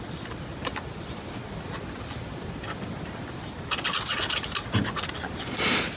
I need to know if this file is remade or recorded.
recorded